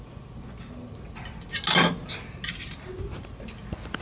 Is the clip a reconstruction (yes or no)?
no